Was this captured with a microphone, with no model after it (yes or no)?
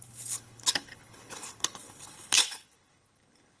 no